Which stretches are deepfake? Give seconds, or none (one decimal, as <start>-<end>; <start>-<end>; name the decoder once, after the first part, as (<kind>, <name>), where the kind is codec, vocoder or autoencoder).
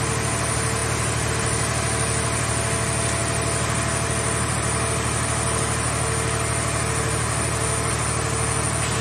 none